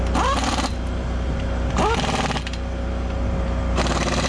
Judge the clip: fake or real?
real